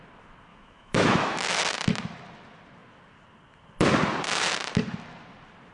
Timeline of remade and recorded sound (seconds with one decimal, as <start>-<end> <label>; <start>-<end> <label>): 0.0-0.5 recorded; 0.5-1.6 remade; 1.6-5.7 recorded